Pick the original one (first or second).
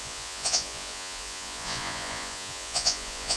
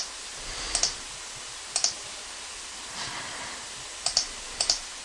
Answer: second